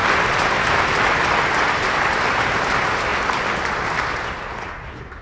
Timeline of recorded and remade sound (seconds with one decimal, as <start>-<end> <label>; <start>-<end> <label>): 0.0-2.2 remade; 2.2-5.2 recorded